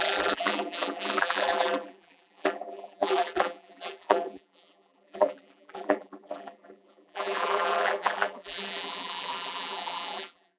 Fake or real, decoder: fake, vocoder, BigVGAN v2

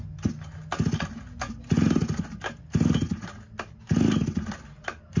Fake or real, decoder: real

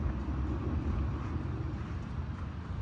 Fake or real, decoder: real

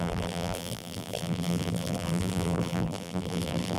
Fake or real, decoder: fake, vocoder, BigVGAN v2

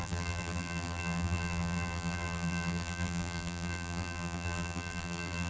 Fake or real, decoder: fake, vocoder, BigVGAN v2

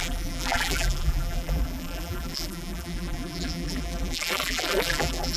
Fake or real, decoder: fake, vocoder, BigVGAN v2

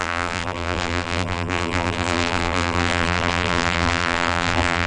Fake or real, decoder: fake, vocoder, BigVGAN v2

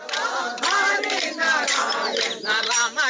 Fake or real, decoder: fake, vocoder, BigVGAN v2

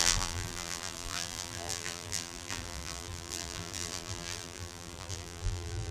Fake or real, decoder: fake, vocoder, BigVGAN v2